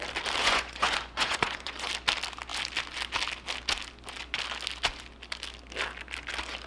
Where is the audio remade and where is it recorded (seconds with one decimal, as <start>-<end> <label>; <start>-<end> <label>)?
0.0-0.4 recorded; 0.4-1.9 remade; 1.9-6.7 recorded